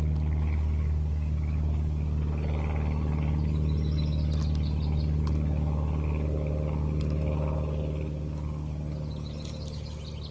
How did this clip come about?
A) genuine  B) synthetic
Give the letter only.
A